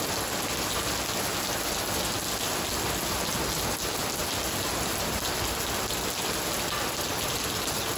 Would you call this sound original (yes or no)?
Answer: yes